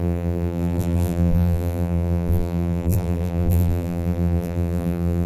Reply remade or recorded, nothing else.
remade